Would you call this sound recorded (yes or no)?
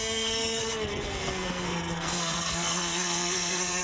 no